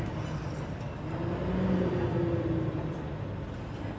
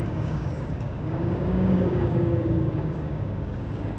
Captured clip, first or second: first